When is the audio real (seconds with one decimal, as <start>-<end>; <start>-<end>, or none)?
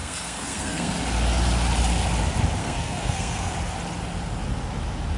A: 0.9-2.6; 3.5-5.2